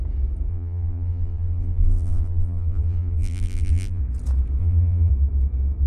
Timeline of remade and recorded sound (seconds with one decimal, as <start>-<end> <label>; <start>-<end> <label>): 0.0-0.5 recorded; 0.5-4.0 remade; 4.0-4.6 recorded; 4.6-5.1 remade; 5.1-5.9 recorded